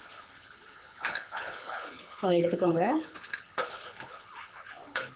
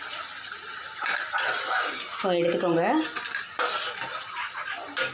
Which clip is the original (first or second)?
second